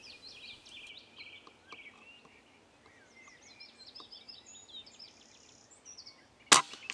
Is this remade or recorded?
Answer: recorded